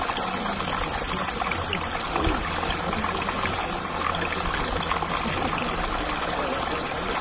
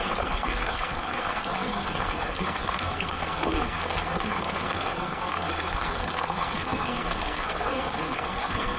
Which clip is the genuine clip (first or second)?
first